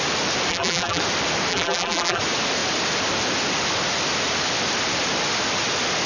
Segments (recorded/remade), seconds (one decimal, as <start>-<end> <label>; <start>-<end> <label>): 0.0-0.5 recorded; 0.5-1.0 remade; 1.0-1.5 recorded; 1.5-2.2 remade; 2.2-6.1 recorded